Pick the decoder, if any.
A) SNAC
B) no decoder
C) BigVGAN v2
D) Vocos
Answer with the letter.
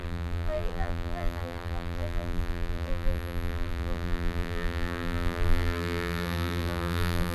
C